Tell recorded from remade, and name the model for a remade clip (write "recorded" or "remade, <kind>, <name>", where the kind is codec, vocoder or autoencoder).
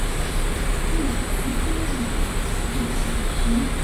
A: recorded